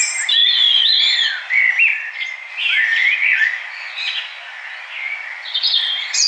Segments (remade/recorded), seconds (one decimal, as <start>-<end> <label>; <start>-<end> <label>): 0.0-1.9 recorded; 1.9-2.5 remade; 2.5-3.0 recorded; 3.0-5.8 remade; 5.8-6.3 recorded